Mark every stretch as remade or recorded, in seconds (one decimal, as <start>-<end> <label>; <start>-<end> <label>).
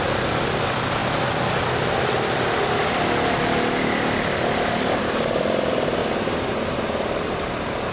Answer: 0.0-7.9 recorded